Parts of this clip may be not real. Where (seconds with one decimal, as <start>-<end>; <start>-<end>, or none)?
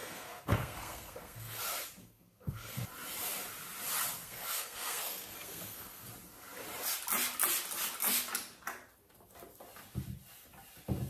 0.0-1.6; 2.0-2.8; 4.2-6.1